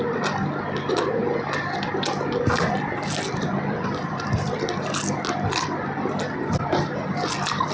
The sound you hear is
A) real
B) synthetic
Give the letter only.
A